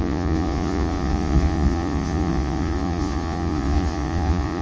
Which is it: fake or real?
fake